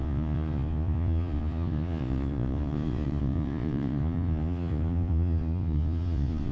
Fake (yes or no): yes